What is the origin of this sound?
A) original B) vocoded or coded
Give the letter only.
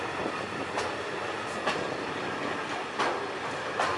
A